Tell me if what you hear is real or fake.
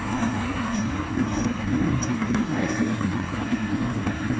fake